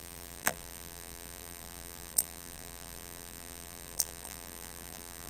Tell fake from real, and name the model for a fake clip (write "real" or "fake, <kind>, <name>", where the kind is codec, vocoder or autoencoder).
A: fake, vocoder, BigVGAN v2